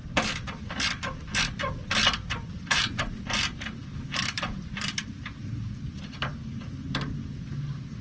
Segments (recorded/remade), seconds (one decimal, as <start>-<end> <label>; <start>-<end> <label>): 0.0-2.5 recorded; 2.5-8.0 remade

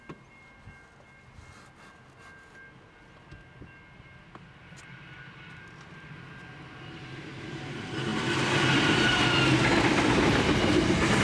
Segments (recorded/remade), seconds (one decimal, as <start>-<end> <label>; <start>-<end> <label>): 0.0-11.2 recorded